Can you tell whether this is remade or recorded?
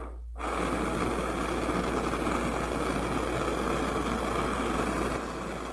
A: recorded